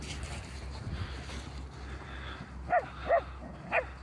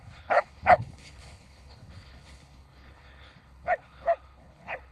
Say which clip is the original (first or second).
first